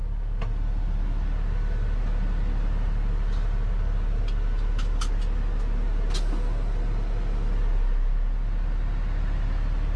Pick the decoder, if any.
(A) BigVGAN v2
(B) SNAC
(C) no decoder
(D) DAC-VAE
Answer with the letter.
C